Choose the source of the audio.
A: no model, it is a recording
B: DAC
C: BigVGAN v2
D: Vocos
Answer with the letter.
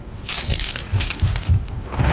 B